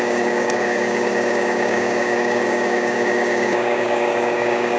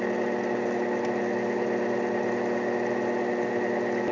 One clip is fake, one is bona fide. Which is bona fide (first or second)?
second